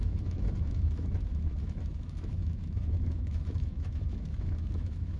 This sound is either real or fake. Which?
fake